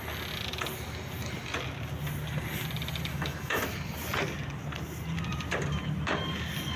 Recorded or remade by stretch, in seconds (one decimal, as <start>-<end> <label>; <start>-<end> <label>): 0.0-3.1 recorded; 3.1-3.6 remade; 3.6-6.8 recorded